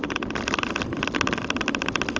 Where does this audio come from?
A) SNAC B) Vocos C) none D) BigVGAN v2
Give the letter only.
C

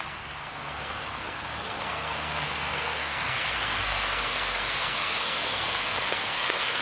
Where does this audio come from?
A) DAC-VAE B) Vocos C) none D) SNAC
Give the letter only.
D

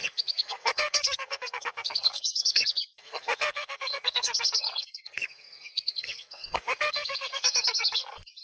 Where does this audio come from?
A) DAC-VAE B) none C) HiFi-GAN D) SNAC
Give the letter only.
D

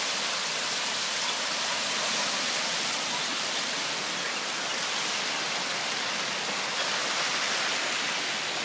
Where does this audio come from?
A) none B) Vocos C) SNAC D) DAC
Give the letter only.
A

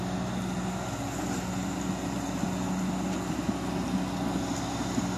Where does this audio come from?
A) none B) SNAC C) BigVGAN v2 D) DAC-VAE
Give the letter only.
A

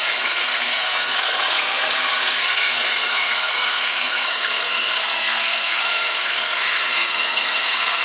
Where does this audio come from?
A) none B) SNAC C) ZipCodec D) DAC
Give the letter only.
B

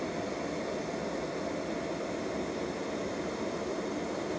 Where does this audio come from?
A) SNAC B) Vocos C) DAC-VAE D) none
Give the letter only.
D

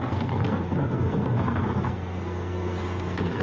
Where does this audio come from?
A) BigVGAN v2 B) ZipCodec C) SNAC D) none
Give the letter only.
C